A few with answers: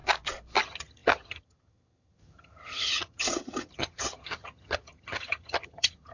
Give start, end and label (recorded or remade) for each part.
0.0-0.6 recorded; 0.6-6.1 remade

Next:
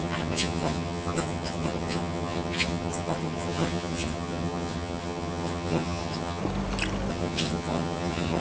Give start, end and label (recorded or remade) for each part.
0.0-6.4 remade; 6.4-7.1 recorded; 7.1-8.4 remade